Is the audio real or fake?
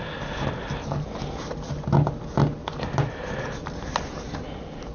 real